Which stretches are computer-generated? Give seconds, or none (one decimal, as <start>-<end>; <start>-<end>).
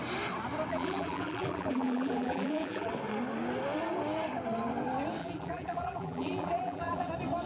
0.7-2.9; 5.2-7.1